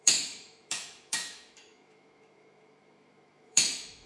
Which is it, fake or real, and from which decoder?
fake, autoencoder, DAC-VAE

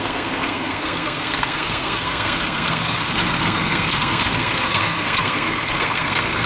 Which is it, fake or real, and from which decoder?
fake, codec, SNAC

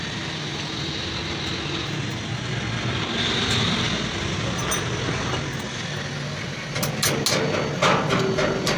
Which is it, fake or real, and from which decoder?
real